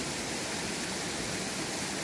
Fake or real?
real